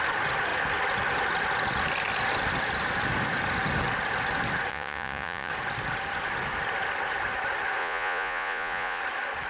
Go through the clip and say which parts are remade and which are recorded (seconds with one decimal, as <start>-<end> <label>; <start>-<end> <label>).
0.0-4.7 recorded; 4.7-5.5 remade; 5.5-7.8 recorded; 7.8-9.0 remade; 9.0-9.5 recorded

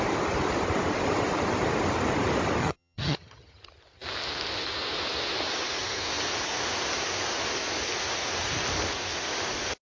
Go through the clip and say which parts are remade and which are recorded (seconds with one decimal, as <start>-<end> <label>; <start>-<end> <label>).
0.0-2.6 recorded; 2.6-3.6 remade; 3.6-9.8 recorded